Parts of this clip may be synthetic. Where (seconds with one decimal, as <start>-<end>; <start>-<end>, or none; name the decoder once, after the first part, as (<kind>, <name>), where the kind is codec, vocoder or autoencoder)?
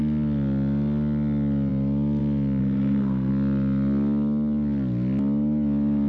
2.6-3.3 (codec, SNAC)